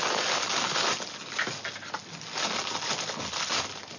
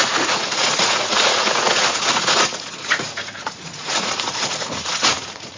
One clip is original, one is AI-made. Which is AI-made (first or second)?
second